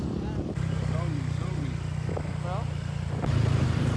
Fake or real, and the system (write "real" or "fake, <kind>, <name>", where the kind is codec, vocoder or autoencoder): real